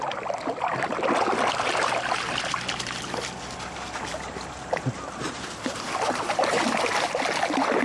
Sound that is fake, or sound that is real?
real